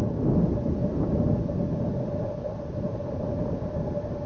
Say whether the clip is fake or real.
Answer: real